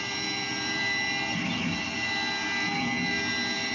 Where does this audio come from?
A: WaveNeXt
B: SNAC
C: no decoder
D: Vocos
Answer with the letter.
C